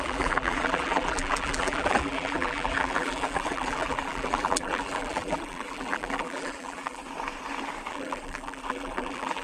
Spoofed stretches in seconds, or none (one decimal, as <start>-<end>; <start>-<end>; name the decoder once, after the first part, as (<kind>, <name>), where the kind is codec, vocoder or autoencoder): 0.0-7.0 (vocoder, BigVGAN v2); 7.9-9.4